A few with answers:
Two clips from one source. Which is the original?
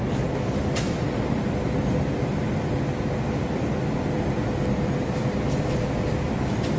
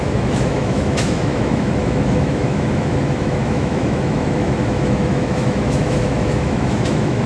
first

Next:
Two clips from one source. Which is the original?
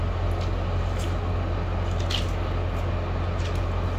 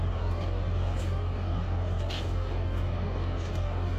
first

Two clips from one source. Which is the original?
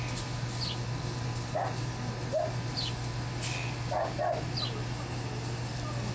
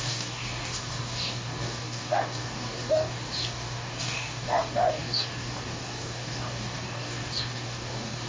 first